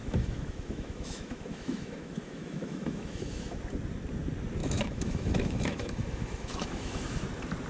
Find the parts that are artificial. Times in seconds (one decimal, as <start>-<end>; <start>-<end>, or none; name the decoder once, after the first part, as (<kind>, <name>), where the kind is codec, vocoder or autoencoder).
0.0-3.6 (autoencoder, DAC-VAE); 4.6-7.2